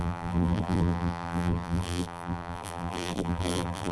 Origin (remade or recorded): remade